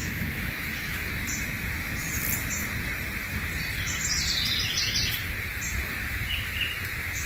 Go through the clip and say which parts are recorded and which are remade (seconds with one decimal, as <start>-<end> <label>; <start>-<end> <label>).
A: 0.0-1.1 remade; 1.1-7.3 recorded